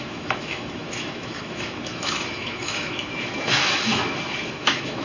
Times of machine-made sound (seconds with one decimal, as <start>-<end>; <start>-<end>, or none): 0.0-5.0